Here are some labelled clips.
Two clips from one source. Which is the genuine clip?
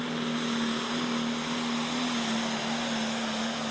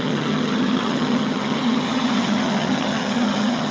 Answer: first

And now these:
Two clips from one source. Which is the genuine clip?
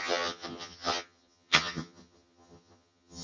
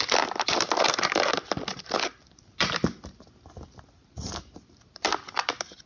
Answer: second